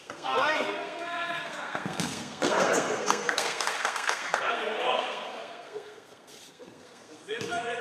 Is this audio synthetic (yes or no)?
yes